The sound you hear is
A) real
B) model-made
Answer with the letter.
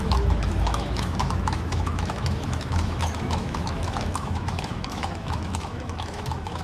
B